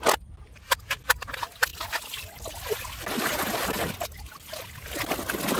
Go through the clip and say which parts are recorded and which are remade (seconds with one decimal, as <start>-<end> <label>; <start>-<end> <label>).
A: 0.0-5.6 recorded